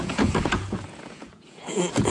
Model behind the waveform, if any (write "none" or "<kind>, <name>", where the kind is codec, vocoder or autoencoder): vocoder, Vocos